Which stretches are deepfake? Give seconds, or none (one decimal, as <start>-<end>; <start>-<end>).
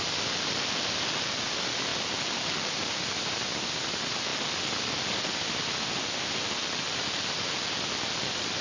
none